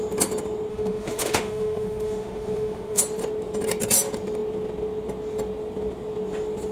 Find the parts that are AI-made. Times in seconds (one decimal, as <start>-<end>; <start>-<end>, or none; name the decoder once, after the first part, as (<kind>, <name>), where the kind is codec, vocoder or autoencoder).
0.7-3.0 (autoencoder, DAC-VAE)